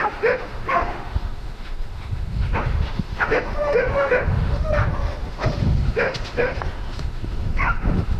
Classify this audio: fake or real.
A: fake